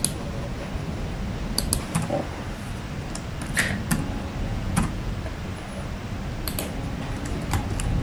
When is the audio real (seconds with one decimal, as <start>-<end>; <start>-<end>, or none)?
0.0-4.5; 5.1-8.0